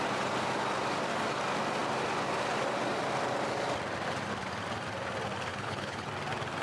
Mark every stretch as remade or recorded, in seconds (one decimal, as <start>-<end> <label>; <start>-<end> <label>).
0.0-5.5 recorded; 5.5-6.1 remade; 6.1-6.6 recorded

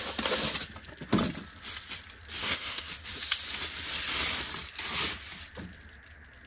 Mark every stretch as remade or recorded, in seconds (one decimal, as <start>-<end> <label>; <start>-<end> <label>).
0.0-2.4 recorded; 2.4-2.9 remade; 2.9-6.5 recorded

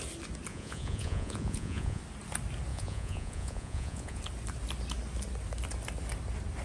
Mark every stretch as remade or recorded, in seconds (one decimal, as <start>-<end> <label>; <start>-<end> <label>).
0.0-0.5 recorded; 0.5-2.0 remade; 2.0-2.7 recorded; 2.7-4.2 remade; 4.2-6.6 recorded

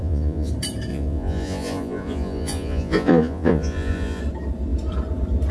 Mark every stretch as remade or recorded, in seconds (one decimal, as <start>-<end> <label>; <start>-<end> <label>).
0.0-0.5 remade; 0.5-0.9 recorded; 0.9-4.2 remade; 4.2-5.5 recorded

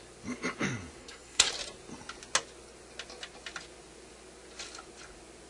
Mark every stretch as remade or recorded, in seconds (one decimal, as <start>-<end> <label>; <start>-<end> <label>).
0.0-1.0 recorded; 1.0-1.5 remade; 1.5-5.5 recorded

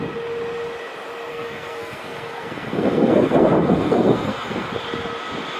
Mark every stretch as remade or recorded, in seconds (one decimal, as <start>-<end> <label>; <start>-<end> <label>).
0.0-1.3 recorded; 1.3-4.7 remade; 4.7-5.6 recorded